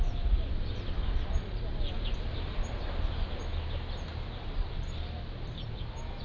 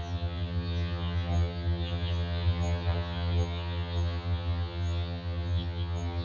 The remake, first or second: second